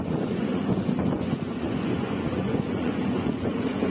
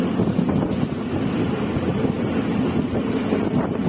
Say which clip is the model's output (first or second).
first